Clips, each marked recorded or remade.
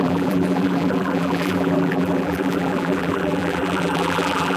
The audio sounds remade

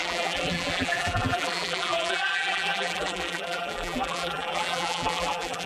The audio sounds remade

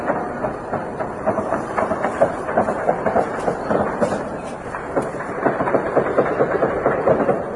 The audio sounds remade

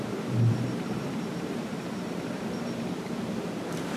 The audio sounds remade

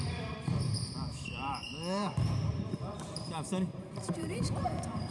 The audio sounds remade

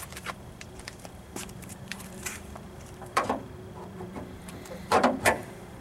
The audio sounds remade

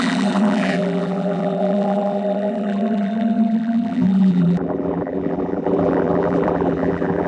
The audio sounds remade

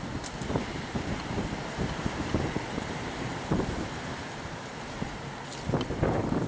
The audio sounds remade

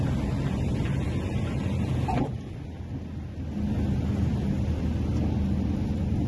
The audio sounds recorded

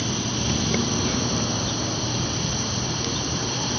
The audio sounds remade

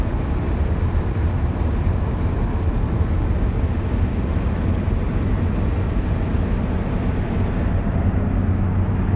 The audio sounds recorded